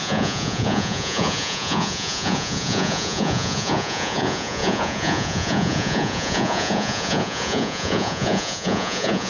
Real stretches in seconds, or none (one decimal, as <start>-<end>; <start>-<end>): none